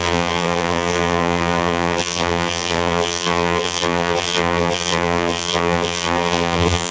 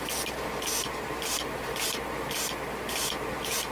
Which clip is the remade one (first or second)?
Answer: first